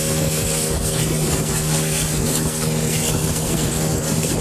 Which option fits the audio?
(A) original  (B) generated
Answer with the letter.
B